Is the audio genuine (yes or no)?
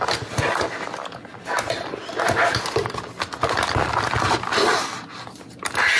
yes